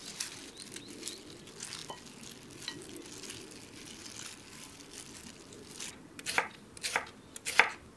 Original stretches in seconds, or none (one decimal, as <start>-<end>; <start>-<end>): 0.0-8.0